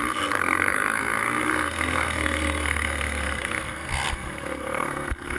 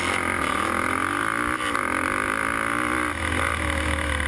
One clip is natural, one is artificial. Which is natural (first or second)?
second